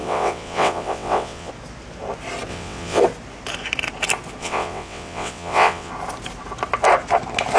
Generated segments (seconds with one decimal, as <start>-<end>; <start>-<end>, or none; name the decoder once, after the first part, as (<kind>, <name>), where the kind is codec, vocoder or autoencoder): 0.0-1.5 (vocoder, WaveNeXt); 2.5-3.0; 4.4-5.9